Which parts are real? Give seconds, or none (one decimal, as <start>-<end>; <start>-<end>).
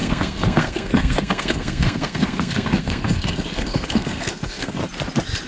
4.8-5.5